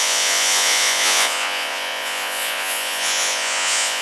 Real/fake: fake